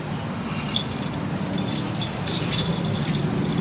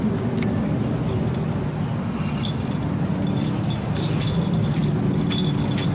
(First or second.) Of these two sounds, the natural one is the second